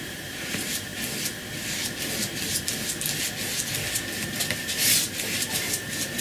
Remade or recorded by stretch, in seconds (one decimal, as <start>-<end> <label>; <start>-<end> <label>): 0.0-0.9 remade; 0.9-4.5 recorded; 4.5-6.2 remade